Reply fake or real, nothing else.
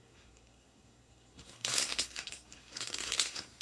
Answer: fake